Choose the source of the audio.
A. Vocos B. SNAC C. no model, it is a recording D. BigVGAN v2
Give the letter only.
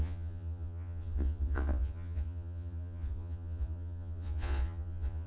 A